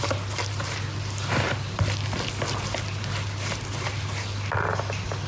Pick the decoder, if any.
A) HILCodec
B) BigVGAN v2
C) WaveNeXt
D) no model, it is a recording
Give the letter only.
D